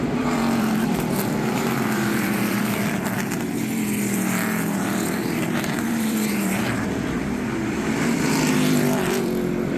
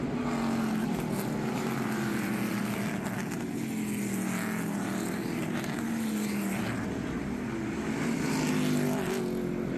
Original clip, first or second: second